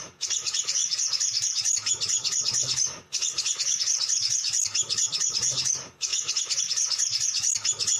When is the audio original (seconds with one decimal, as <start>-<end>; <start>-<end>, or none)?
none